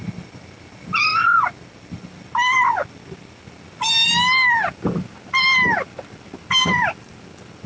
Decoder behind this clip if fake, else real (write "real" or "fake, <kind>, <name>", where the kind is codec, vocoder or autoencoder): real